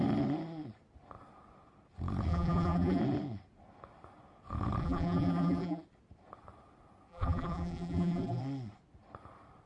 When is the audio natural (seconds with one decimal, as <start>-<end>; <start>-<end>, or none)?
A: 0.0-2.3; 3.0-4.8; 5.8-7.1; 8.4-9.7